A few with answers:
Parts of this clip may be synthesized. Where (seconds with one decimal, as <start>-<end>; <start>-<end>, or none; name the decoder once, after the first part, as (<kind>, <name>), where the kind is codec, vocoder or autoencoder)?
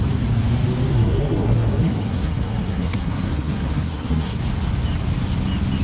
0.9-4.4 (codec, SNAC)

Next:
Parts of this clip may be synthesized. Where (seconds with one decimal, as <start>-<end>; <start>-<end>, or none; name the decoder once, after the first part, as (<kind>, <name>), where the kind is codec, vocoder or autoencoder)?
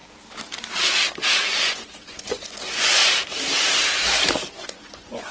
1.4-3.0 (vocoder, Vocos); 4.5-5.3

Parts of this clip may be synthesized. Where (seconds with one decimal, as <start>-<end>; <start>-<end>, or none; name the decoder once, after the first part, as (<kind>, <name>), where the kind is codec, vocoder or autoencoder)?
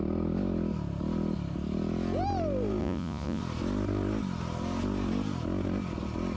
2.8-3.4 (vocoder, Vocos)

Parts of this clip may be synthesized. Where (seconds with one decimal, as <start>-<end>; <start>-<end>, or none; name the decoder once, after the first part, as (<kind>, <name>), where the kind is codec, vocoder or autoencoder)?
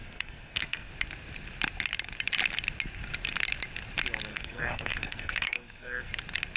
0.0-0.9 (codec, SNAC); 4.3-6.1